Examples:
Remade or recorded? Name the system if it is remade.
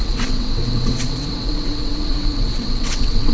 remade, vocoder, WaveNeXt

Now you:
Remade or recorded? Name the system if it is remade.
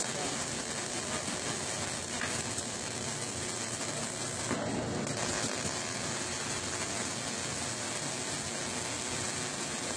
recorded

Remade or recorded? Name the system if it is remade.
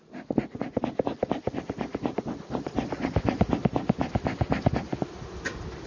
recorded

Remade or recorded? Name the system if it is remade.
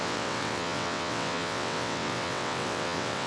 remade, vocoder, WaveNeXt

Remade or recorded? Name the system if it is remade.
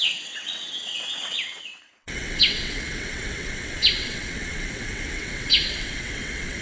remade, vocoder, WaveNeXt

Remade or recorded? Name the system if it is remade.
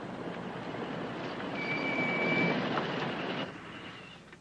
recorded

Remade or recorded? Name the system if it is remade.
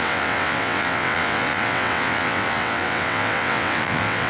remade, vocoder, WaveNeXt